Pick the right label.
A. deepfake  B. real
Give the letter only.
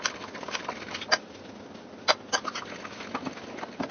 B